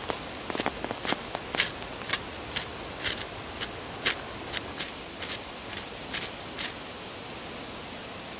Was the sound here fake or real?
real